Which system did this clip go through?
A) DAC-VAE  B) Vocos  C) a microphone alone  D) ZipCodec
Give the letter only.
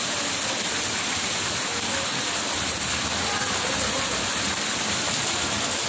C